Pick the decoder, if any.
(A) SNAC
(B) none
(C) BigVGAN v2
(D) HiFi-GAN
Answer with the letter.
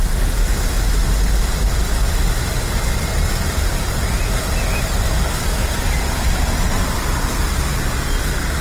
B